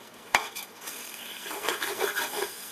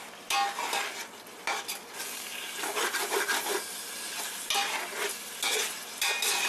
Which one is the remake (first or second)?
first